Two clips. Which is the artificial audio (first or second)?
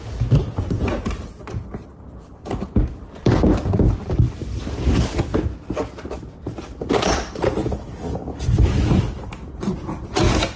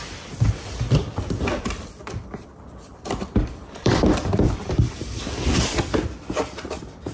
second